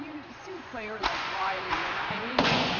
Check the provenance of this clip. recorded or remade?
remade